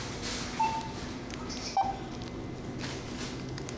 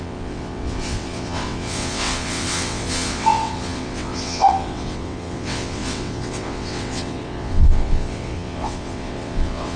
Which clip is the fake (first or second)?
second